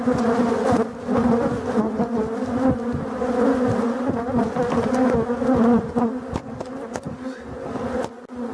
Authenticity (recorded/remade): recorded